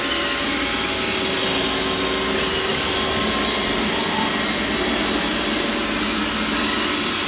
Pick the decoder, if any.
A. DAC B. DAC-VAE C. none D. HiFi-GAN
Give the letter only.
C